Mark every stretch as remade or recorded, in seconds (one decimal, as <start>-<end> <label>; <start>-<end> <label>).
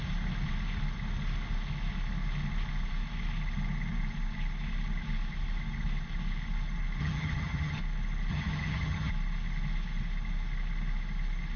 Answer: 0.0-7.0 recorded; 7.0-7.8 remade; 7.8-8.3 recorded; 8.3-9.1 remade; 9.1-11.6 recorded